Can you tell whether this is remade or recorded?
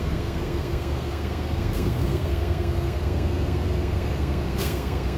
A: remade